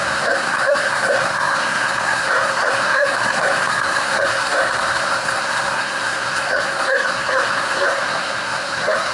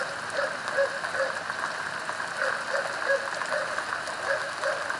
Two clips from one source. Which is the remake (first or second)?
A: first